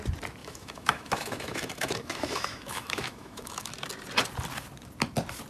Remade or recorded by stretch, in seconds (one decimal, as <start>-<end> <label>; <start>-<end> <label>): 0.0-0.4 recorded; 0.4-3.7 remade; 3.7-5.5 recorded